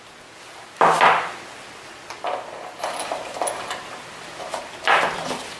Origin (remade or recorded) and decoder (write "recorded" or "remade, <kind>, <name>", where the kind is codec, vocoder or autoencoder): recorded